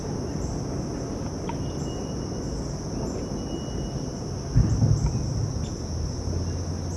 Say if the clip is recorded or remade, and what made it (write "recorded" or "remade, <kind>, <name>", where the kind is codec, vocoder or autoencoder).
recorded